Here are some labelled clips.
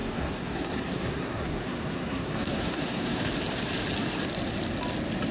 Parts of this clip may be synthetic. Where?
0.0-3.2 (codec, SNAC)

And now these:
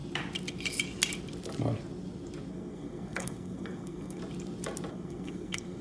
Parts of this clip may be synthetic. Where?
2.5-4.2 (codec, SNAC); 4.9-5.8

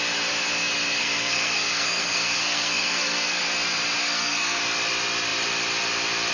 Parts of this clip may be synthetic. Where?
1.0-3.4 (codec, SNAC); 4.0-4.6

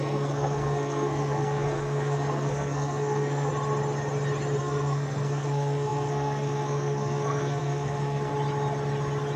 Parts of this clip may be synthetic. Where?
0.0-3.5 (codec, SNAC); 4.6-8.3

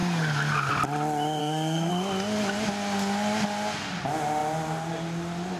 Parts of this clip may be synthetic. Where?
1.4-1.9 (codec, SNAC)

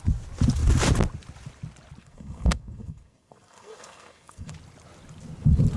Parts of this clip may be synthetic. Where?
2.0-4.5 (codec, SNAC)

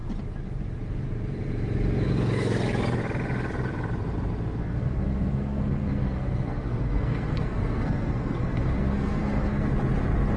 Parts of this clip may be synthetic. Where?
4.6-9.7 (codec, SNAC)